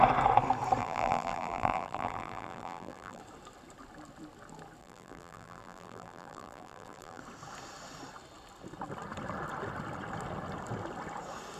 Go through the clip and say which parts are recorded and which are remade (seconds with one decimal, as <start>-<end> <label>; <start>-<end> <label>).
0.0-0.8 recorded; 0.8-3.2 remade; 3.2-4.8 recorded; 4.8-7.2 remade; 7.2-11.6 recorded